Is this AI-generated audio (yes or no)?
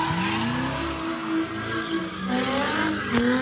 no